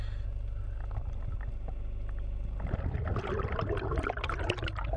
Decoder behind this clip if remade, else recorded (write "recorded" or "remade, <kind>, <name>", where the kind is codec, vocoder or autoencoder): recorded